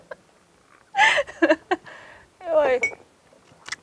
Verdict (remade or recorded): recorded